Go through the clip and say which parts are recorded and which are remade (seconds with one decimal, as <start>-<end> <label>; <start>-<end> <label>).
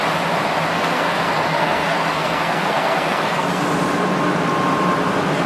0.0-0.7 recorded; 0.7-3.6 remade; 3.6-5.5 recorded